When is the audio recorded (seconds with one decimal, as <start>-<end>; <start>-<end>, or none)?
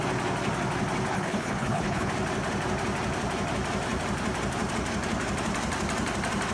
0.0-1.1; 2.1-6.5